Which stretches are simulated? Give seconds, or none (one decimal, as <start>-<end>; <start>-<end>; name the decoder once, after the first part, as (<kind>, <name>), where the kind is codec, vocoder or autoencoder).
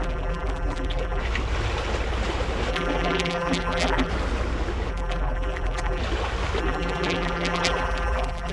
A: 0.0-1.2 (vocoder, BigVGAN v2); 2.7-4.1; 4.9-6.0; 6.6-8.5